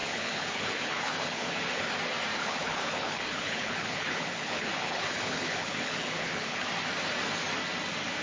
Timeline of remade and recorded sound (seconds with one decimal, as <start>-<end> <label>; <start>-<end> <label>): 0.0-1.9 remade; 1.9-2.4 recorded; 2.4-6.7 remade; 6.7-8.2 recorded